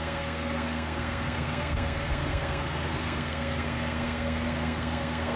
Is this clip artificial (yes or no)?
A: yes